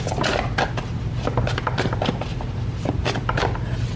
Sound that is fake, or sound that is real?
real